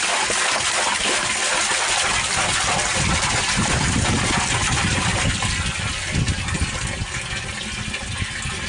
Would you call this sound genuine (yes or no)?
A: yes